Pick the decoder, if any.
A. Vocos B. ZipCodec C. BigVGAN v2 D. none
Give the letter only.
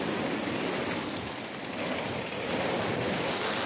D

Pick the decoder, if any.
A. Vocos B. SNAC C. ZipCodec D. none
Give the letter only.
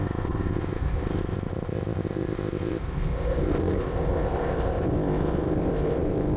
C